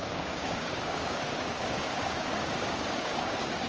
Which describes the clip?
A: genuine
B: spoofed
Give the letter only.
B